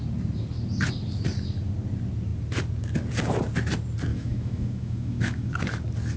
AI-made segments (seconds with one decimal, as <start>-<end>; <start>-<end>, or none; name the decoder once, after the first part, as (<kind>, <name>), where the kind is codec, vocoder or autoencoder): 4.1-5.5 (autoencoder, DAC-VAE)